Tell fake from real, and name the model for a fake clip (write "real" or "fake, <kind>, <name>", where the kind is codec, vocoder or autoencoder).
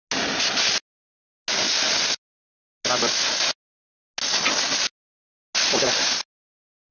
real